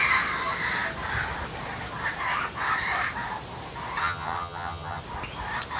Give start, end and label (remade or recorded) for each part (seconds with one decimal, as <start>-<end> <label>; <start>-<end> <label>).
0.0-4.0 recorded; 4.0-5.0 remade; 5.0-5.8 recorded